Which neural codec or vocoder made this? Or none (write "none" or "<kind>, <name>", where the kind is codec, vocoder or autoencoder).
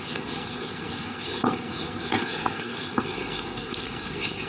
codec, SNAC